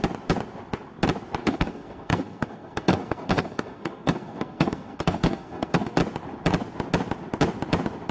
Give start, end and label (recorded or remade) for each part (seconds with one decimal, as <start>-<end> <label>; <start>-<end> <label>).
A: 0.0-1.4 recorded; 1.4-6.0 remade; 6.0-8.1 recorded